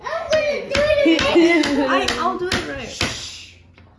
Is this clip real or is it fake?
real